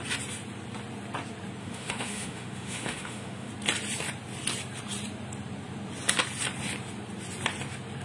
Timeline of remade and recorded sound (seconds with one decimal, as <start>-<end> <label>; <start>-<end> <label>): 0.0-1.6 recorded; 1.6-3.5 remade; 3.5-8.0 recorded